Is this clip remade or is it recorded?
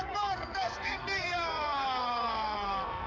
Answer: remade